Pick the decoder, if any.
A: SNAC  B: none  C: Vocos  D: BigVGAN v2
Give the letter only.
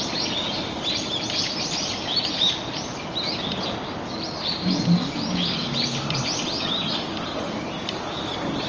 B